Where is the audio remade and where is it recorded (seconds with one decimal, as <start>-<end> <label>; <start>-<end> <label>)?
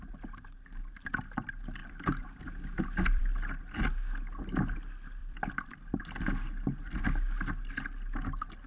0.0-1.8 recorded; 1.8-3.2 remade; 3.2-5.2 recorded; 5.2-6.0 remade; 6.0-8.7 recorded